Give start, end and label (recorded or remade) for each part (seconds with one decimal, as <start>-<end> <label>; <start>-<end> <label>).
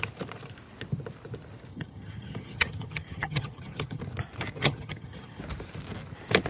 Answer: 0.0-1.7 recorded; 1.7-4.0 remade; 4.0-4.6 recorded; 4.6-5.4 remade; 5.4-6.5 recorded